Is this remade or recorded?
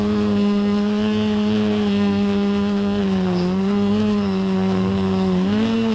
remade